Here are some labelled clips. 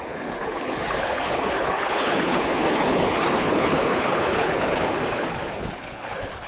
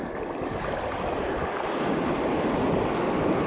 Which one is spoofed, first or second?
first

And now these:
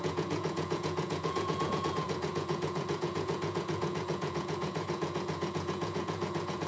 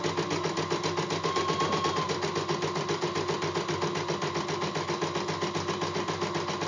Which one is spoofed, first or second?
first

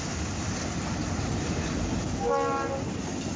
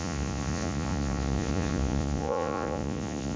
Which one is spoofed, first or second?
second